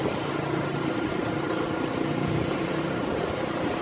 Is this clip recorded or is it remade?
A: recorded